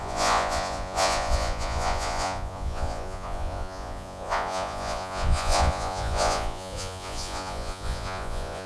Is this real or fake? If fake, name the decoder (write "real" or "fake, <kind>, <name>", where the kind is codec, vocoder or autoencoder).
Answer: fake, vocoder, Vocos